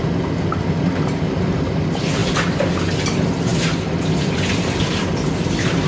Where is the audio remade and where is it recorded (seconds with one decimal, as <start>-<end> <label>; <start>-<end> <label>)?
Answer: 0.0-5.9 recorded